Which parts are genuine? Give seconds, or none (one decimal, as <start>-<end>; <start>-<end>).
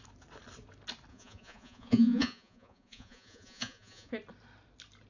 0.0-1.1; 4.1-5.1